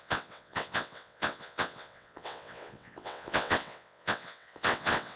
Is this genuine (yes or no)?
no